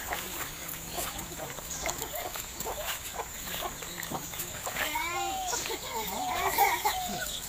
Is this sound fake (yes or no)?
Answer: yes